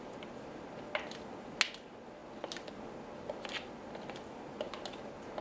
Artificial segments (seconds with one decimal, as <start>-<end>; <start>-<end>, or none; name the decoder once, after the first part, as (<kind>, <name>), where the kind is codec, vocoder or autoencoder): none